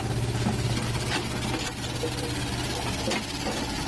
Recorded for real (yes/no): yes